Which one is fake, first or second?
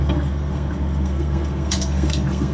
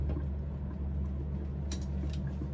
first